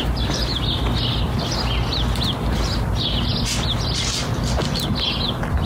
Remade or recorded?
recorded